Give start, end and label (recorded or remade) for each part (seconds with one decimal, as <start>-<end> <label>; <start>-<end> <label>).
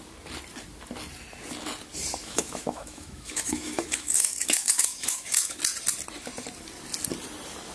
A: 0.0-2.2 recorded; 2.2-5.6 remade; 5.6-7.7 recorded